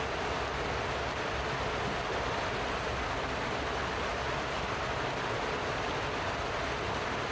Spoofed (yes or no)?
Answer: no